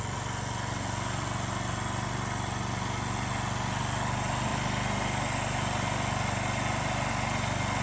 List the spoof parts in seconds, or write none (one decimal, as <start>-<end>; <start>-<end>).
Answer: none